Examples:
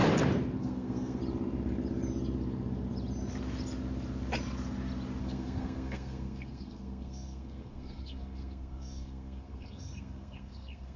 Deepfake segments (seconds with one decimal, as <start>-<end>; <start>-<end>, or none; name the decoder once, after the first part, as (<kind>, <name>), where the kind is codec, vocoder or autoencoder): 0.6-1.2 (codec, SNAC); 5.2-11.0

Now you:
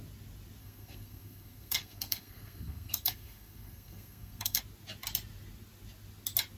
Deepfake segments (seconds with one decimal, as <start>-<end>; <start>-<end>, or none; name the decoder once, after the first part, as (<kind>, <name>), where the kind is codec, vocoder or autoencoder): 0.6-4.6 (codec, SNAC)

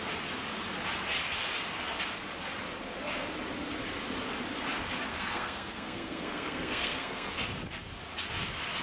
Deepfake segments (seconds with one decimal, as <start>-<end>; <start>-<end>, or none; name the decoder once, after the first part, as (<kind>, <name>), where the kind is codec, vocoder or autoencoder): 5.1-7.3 (codec, SNAC)